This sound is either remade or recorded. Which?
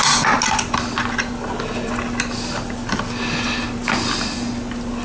recorded